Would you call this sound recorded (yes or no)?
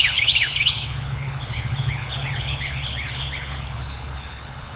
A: no